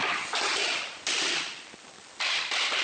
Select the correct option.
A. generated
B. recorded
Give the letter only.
B